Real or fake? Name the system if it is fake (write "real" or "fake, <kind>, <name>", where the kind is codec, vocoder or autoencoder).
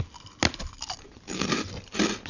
real